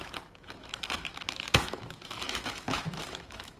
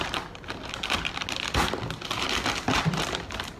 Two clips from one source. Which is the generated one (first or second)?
first